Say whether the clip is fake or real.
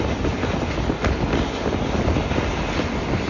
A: real